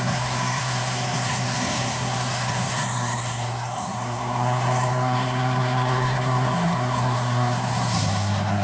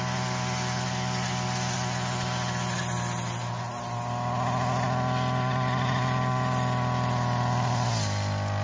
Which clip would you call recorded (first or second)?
second